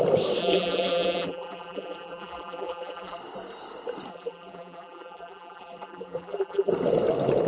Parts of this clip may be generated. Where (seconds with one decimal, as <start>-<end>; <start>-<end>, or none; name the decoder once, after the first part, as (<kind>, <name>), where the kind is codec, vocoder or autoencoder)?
0.4-3.2 (vocoder, BigVGAN v2); 4.1-6.7